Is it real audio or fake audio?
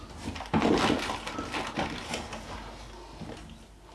real